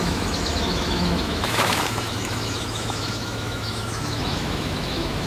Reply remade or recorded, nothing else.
remade